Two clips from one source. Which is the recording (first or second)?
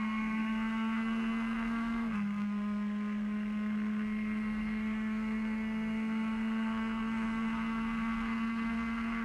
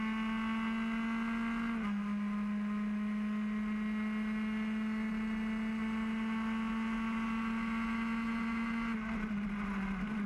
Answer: second